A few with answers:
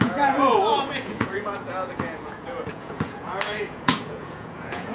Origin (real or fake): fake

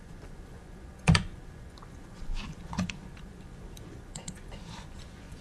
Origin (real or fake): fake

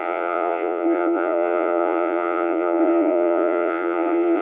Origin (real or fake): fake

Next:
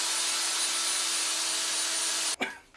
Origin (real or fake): real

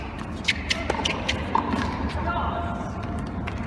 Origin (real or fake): real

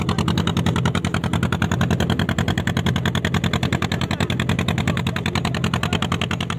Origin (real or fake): real